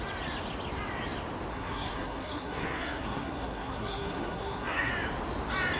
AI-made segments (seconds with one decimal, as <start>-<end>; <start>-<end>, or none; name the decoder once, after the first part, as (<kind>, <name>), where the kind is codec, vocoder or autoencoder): 1.5-4.9 (codec, SNAC)